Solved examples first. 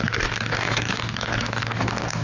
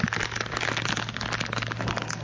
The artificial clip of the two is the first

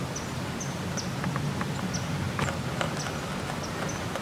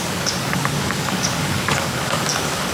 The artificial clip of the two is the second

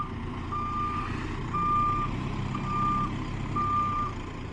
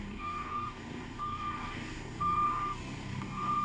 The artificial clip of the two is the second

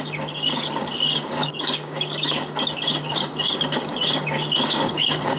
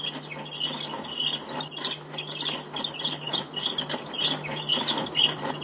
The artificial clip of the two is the first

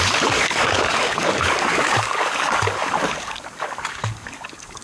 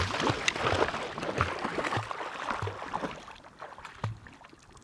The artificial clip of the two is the first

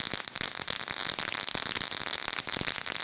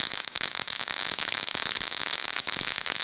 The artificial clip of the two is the second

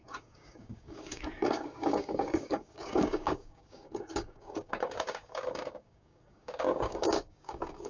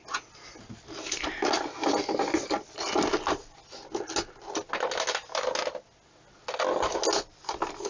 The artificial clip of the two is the first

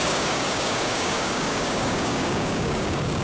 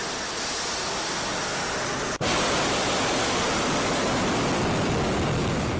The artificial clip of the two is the first